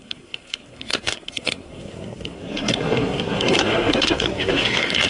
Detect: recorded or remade remade